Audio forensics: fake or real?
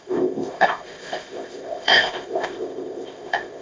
fake